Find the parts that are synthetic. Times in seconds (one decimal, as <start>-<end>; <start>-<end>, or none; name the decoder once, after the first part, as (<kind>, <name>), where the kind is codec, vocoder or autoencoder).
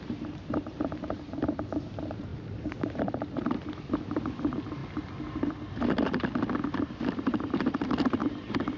0.0-4.8 (vocoder, BigVGAN v2); 7.1-8.2